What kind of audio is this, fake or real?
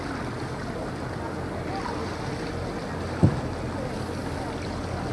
real